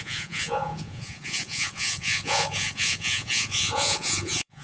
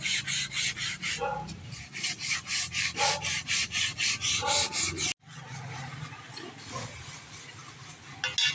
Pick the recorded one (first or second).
second